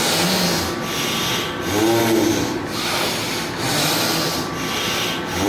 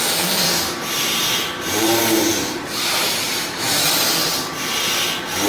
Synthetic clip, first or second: second